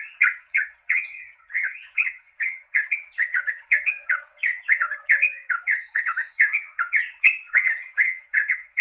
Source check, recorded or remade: remade